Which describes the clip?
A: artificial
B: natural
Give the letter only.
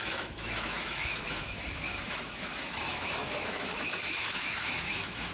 A